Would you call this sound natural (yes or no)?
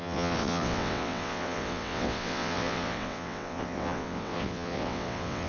no